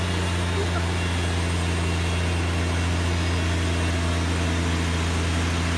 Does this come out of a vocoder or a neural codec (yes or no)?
no